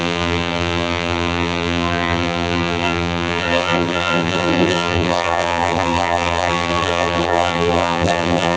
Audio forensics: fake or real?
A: fake